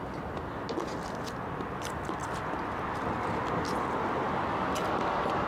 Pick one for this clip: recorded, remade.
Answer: recorded